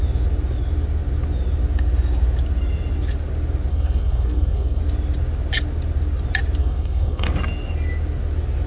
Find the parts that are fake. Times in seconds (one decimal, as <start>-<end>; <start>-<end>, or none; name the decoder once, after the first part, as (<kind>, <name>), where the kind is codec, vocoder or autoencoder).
3.7-4.8 (codec, SNAC); 6.6-7.3